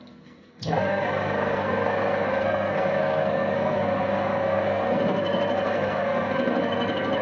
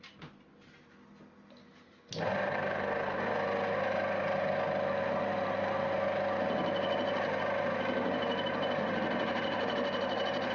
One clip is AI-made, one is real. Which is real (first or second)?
second